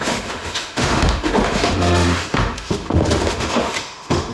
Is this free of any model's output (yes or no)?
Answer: no